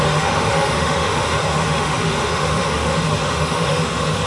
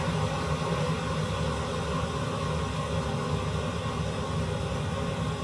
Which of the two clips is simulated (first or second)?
first